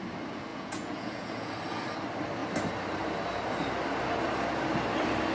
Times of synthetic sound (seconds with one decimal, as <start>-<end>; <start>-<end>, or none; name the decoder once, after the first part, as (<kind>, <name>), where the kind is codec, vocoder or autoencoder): 0.5-1.5 (vocoder, Vocos)